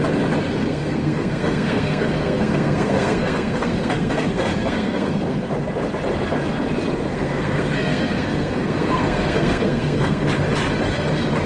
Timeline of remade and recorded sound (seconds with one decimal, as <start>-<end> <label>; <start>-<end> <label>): 0.0-0.6 recorded; 0.6-5.5 remade; 5.5-7.1 recorded; 7.1-10.3 remade; 10.3-11.5 recorded